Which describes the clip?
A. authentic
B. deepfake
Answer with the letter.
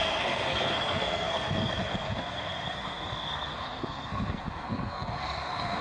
B